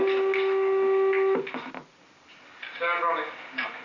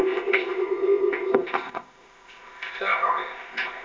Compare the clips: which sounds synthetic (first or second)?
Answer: second